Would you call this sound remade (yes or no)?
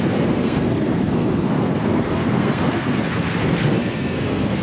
yes